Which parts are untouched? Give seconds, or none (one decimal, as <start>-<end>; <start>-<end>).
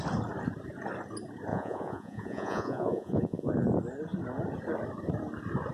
0.0-1.5; 3.5-5.7